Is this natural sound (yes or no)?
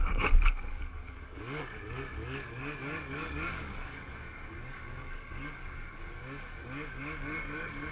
no